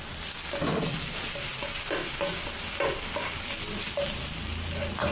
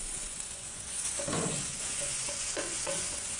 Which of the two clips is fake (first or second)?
second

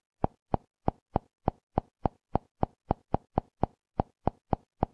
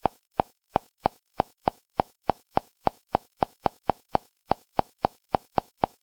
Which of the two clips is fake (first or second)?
second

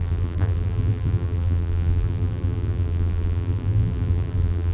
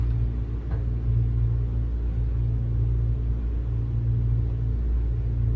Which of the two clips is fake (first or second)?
first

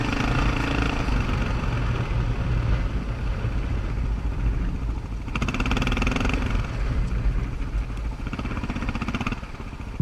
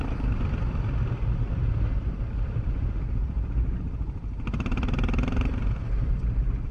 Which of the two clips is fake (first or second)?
second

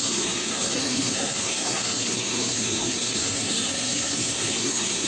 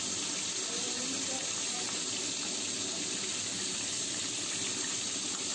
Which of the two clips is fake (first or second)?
first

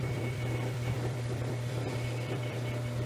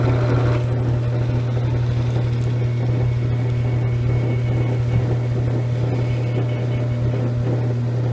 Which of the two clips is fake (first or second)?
first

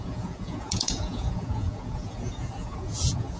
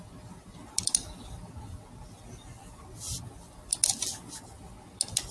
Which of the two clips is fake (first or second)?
first